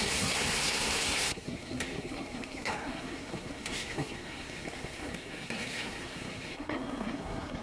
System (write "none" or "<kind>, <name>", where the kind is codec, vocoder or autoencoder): codec, SNAC